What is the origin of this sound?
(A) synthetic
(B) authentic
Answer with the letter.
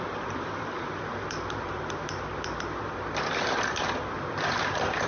A